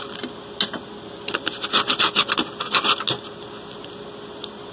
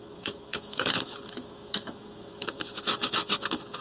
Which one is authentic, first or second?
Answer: first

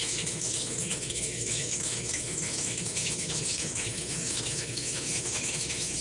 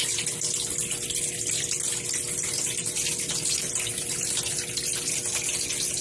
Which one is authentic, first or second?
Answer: second